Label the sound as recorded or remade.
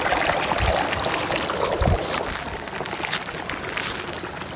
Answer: recorded